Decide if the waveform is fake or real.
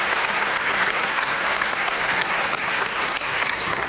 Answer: fake